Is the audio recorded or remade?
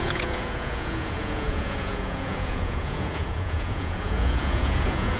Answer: remade